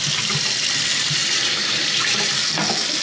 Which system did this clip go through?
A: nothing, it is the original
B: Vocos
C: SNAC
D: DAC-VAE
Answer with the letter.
A